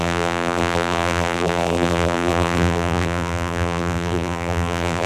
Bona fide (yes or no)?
no